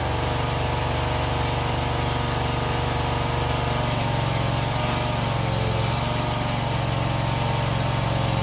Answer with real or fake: real